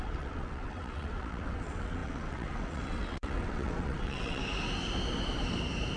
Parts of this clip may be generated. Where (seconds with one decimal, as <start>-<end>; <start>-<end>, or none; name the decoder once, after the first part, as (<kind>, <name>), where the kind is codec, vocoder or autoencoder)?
0.0-4.4 (vocoder, WaveNeXt)